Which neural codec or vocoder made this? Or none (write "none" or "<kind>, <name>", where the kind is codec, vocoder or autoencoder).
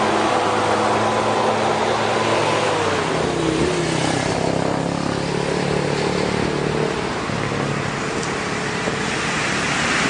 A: none